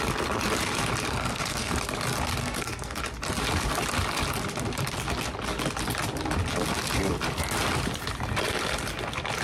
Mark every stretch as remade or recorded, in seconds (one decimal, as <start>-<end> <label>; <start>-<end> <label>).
0.0-1.1 recorded; 1.1-1.7 remade; 1.7-2.4 recorded; 2.4-3.0 remade; 3.0-9.4 recorded